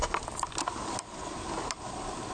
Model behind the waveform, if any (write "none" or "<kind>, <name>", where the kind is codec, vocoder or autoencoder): none